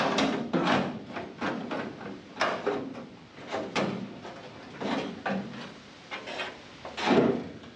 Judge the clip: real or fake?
real